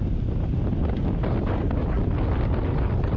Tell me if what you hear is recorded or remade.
recorded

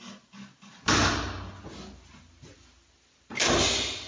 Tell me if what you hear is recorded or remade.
recorded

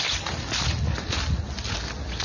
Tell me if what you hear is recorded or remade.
recorded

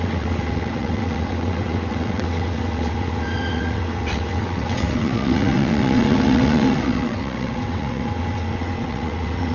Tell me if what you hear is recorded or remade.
remade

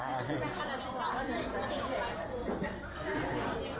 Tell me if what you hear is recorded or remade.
recorded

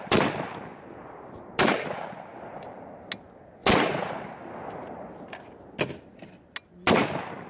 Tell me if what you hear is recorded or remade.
recorded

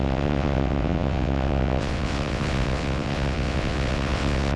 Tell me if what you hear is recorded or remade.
remade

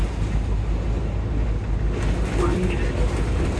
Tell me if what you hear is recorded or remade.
recorded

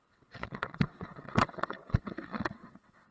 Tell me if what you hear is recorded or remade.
remade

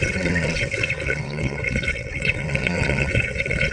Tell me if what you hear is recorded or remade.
remade